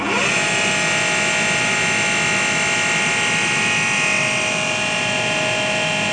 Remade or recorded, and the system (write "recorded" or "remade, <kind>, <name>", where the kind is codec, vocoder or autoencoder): recorded